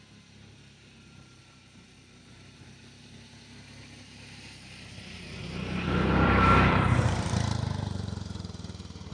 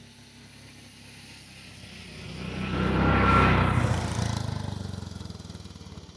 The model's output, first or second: first